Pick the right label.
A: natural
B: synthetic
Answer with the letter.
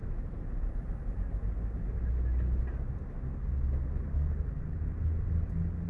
A